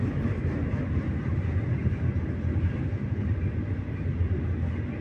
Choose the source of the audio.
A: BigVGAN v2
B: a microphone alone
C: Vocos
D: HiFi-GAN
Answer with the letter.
B